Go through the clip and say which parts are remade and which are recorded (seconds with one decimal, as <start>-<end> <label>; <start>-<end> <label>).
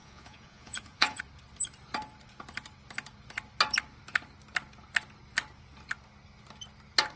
0.0-1.2 remade; 1.2-7.2 recorded